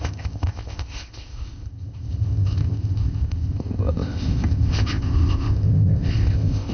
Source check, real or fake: fake